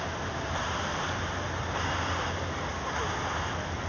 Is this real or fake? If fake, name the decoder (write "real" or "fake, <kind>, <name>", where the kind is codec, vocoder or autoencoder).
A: real